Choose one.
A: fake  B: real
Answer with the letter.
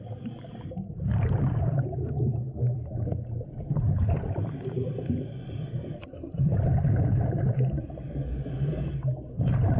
A